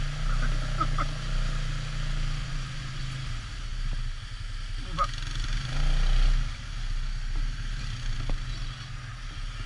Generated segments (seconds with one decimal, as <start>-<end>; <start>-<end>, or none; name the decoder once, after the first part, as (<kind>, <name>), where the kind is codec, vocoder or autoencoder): 2.4-3.0 (vocoder, Vocos)